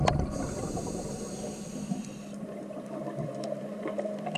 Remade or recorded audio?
remade